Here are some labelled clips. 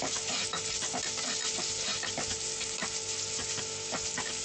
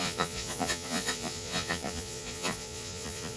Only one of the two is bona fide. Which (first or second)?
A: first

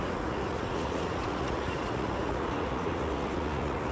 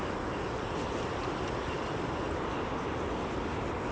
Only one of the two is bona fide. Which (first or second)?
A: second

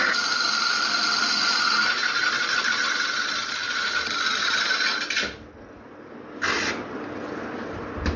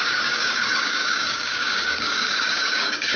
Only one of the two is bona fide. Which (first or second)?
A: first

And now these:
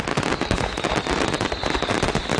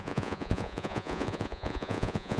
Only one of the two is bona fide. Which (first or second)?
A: first